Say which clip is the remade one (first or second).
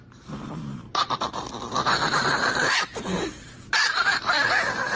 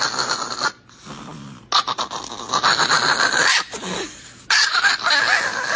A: first